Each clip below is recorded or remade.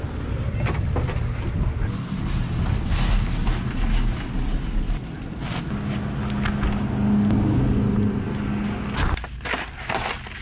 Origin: recorded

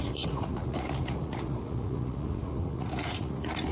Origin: remade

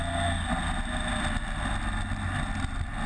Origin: recorded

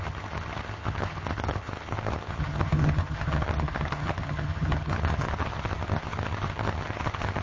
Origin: remade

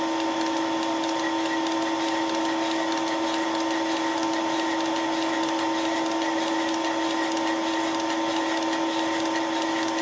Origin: recorded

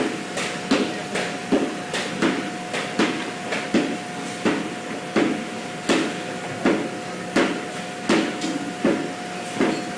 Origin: recorded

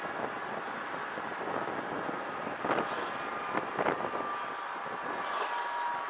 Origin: recorded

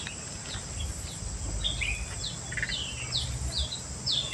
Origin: recorded